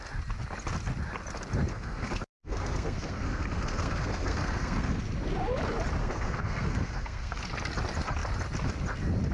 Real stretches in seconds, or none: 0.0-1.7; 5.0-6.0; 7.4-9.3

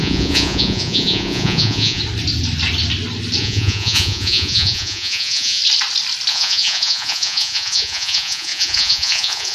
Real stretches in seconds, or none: 2.0-3.4; 5.6-6.3